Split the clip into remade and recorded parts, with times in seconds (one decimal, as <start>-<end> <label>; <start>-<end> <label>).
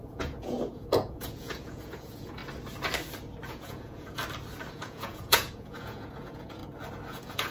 0.0-2.4 remade; 2.4-3.5 recorded; 3.5-4.2 remade; 4.2-4.7 recorded; 4.7-6.6 remade; 6.6-7.1 recorded; 7.1-7.5 remade